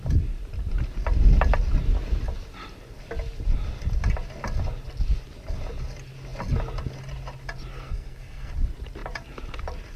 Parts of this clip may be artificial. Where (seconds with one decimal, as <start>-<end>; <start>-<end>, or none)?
7.7-8.5

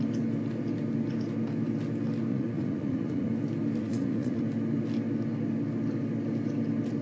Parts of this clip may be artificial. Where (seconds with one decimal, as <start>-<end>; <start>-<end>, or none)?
2.3-3.3; 3.8-4.4

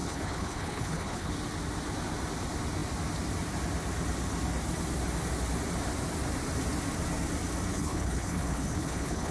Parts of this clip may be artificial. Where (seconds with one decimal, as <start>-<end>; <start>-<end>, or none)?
0.0-1.3; 7.7-9.3

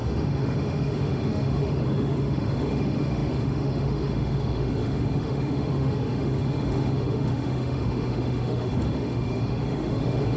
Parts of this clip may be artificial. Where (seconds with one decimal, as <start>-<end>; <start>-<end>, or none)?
0.0-10.4

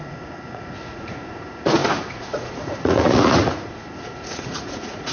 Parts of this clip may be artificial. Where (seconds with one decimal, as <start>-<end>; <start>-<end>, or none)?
0.0-5.1

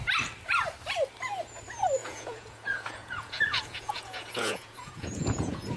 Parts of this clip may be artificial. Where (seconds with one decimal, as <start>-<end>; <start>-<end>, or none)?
2.0-5.8

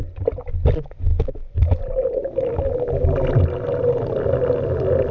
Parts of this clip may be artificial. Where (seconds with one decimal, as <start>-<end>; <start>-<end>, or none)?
none